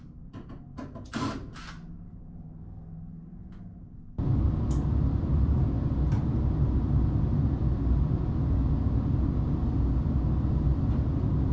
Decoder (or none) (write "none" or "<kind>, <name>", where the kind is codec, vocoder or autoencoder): none